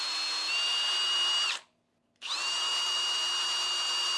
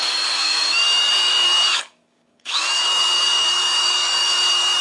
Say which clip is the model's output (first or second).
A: second